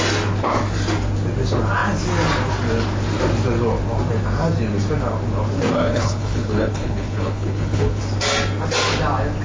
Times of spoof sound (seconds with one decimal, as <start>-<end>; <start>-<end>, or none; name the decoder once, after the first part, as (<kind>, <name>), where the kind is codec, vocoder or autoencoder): 5.9-8.0 (codec, HILCodec)